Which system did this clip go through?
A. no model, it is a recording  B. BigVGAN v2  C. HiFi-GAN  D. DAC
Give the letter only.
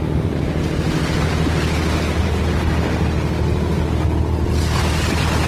A